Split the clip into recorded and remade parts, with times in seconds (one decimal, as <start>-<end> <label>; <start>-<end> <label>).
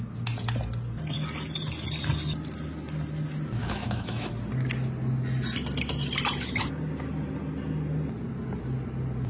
0.0-3.6 recorded; 3.6-4.3 remade; 4.3-9.3 recorded